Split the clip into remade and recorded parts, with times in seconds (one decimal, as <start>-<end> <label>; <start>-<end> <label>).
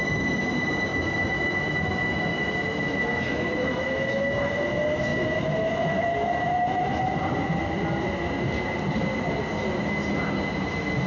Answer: 0.0-0.9 recorded; 0.9-4.5 remade; 4.5-5.1 recorded; 5.1-7.0 remade; 7.0-11.1 recorded